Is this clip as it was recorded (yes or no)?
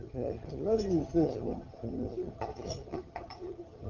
no